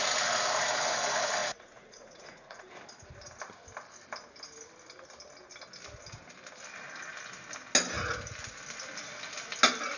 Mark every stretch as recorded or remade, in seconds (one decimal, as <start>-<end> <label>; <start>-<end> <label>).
0.0-1.4 recorded; 1.4-2.7 remade; 2.7-10.0 recorded